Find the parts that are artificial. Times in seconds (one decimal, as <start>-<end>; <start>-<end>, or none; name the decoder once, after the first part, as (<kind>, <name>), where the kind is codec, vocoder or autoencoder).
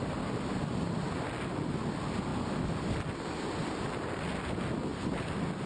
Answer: none